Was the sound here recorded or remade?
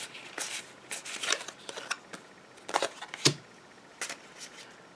recorded